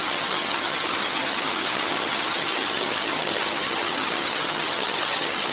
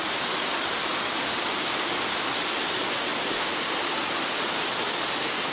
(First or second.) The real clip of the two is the second